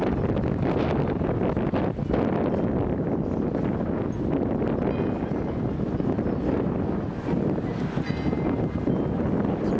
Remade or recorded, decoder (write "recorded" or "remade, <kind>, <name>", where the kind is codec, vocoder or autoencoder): recorded